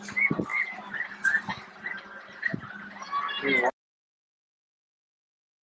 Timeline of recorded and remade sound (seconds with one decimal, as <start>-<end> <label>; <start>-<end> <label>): 0.0-1.5 recorded; 1.5-2.0 remade; 2.0-5.6 recorded